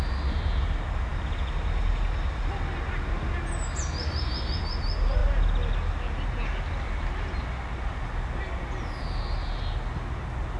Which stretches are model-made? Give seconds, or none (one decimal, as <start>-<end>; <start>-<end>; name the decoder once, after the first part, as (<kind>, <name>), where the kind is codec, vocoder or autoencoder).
none